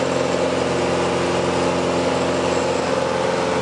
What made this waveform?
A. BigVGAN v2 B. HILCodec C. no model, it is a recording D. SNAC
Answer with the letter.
C